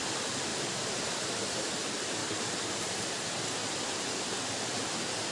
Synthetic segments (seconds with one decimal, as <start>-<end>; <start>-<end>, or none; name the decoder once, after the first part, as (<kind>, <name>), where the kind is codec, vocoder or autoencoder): 0.5-1.7 (vocoder, BigVGAN v2); 2.2-3.0; 3.6-4.4